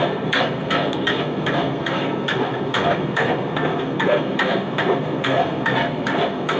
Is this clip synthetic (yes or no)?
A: yes